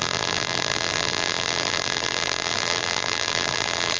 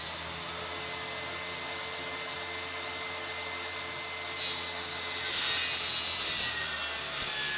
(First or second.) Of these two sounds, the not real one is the first